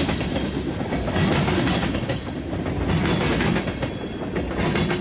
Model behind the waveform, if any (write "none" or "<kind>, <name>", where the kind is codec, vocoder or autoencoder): none